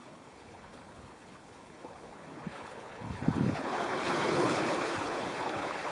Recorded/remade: remade